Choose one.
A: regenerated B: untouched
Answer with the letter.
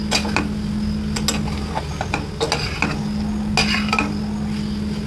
B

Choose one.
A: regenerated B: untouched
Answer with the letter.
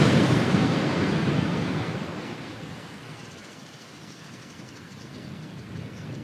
A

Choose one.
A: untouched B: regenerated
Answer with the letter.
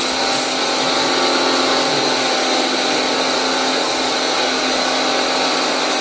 A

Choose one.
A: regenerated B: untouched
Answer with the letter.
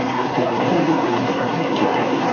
A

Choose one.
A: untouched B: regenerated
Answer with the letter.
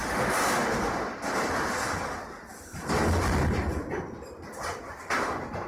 A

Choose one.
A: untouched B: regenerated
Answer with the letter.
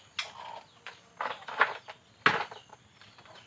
A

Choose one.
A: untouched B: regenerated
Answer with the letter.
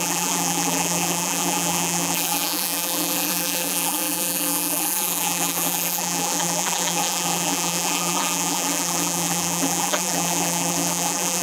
B